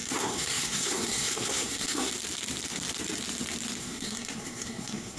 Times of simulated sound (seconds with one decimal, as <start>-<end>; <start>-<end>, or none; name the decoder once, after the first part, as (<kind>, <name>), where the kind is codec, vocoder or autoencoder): 0.0-2.1 (codec, SNAC); 3.8-5.2